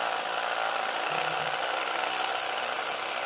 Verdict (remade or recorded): recorded